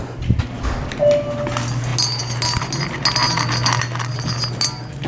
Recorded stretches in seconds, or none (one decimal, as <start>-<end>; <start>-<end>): 0.0-5.1